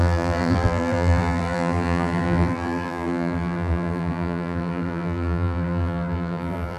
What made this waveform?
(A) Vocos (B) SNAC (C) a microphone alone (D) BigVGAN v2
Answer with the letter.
D